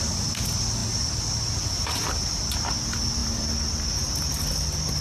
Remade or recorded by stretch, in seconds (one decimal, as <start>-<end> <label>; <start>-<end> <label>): 0.0-3.2 recorded; 3.2-4.1 remade; 4.1-5.0 recorded